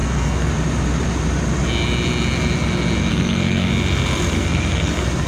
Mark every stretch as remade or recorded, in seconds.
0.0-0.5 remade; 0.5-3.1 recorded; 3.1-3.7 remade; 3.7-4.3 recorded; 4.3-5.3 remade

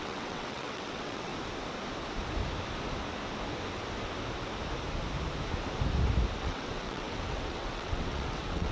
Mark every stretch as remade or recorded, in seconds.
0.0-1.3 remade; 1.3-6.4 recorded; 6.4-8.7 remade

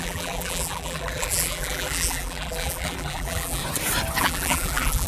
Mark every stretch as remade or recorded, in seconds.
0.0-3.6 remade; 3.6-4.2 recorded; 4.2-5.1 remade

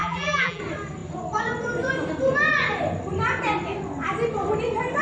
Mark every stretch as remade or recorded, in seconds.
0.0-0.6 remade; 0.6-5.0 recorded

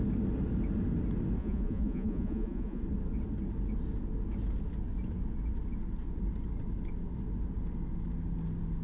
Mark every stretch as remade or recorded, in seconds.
0.0-1.4 recorded; 1.4-2.8 remade; 2.8-8.8 recorded

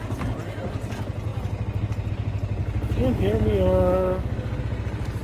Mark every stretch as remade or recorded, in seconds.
0.0-2.6 recorded; 2.6-4.6 remade; 4.6-5.2 recorded

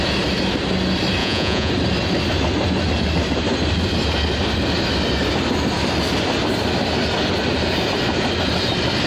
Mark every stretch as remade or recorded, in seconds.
0.0-1.2 recorded; 1.2-1.7 remade; 1.7-9.1 recorded